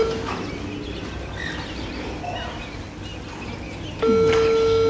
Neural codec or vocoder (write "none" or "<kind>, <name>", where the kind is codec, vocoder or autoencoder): none